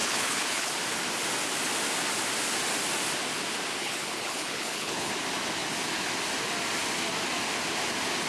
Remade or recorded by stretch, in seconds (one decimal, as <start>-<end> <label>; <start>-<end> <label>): 0.0-0.7 remade; 0.7-3.8 recorded; 3.8-5.1 remade; 5.1-8.3 recorded